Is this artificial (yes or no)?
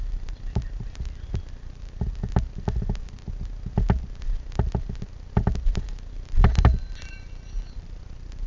no